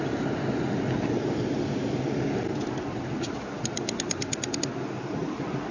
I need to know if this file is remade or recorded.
recorded